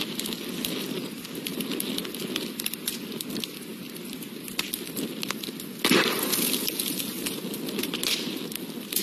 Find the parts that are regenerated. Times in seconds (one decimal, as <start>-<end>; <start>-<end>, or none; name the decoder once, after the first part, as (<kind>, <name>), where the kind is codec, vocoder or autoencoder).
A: none